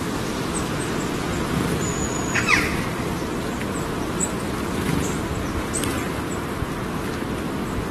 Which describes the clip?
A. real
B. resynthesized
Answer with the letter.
A